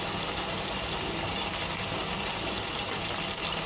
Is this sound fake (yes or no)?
no